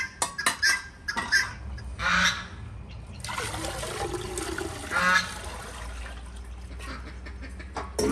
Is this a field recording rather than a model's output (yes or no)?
yes